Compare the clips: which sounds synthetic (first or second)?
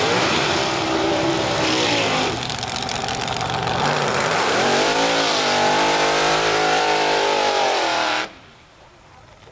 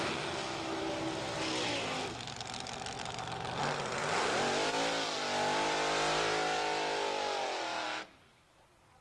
first